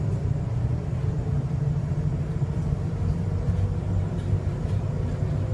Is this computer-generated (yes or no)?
no